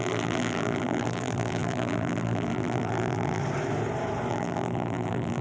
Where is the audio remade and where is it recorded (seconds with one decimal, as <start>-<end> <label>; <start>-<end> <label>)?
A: 0.0-3.4 remade; 3.4-4.3 recorded; 4.3-5.4 remade